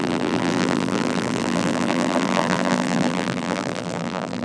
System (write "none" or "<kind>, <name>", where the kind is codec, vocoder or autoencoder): vocoder, BigVGAN v2